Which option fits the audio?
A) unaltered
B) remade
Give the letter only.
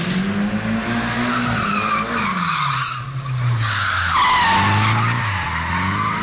A